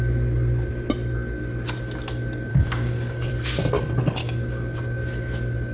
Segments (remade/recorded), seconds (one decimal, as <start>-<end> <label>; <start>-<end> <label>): 0.0-2.5 recorded; 2.5-3.3 remade; 3.3-4.2 recorded; 4.2-4.8 remade; 4.8-5.7 recorded